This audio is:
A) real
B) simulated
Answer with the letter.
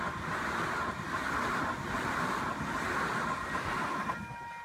A